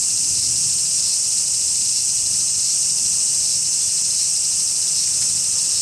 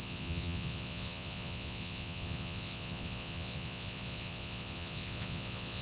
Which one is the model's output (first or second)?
second